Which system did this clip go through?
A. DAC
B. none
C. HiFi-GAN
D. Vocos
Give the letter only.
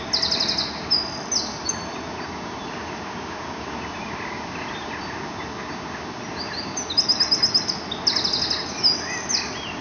B